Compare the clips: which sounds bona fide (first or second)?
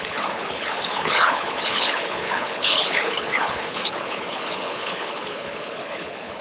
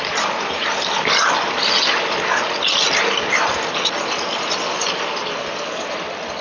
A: second